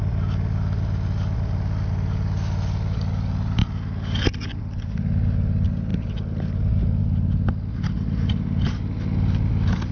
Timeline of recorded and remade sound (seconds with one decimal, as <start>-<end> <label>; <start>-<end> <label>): 0.0-9.9 recorded